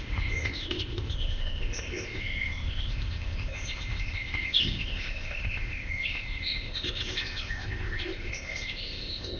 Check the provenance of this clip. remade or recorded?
remade